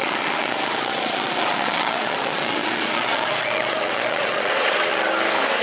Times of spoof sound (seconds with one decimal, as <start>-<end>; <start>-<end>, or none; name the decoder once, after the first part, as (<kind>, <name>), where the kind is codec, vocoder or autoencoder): 0.0-4.9 (vocoder, Vocos)